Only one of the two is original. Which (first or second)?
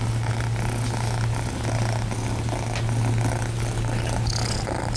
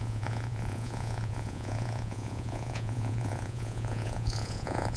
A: first